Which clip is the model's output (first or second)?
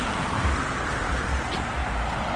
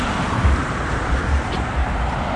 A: second